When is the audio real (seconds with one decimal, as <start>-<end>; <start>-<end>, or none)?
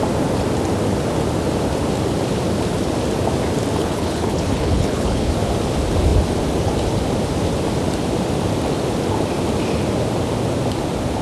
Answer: 0.0-3.8; 5.3-11.2